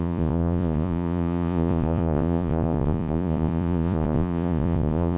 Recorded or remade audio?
remade